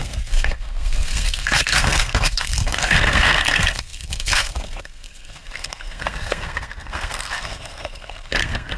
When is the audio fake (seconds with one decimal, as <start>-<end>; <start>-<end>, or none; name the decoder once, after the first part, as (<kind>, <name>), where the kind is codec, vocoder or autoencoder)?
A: 0.0-8.8 (codec, SNAC)